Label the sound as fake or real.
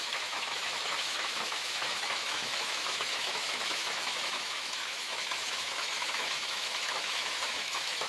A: fake